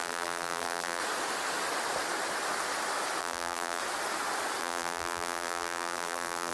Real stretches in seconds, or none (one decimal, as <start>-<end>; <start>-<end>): 1.0-3.2; 3.8-4.6